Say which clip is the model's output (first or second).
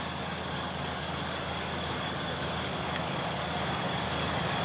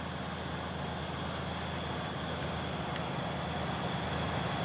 first